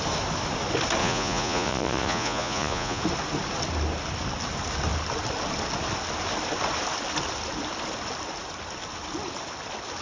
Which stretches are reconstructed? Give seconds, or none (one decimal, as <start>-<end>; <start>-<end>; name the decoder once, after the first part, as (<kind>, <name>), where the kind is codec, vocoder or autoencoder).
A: 1.0-3.0 (vocoder, Vocos)